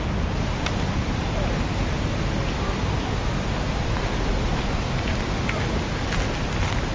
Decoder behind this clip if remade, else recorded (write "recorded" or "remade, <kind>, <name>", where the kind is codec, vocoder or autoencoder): recorded